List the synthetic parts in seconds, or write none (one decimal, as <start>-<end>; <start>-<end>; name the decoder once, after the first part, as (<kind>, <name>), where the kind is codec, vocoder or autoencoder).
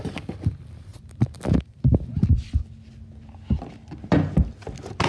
none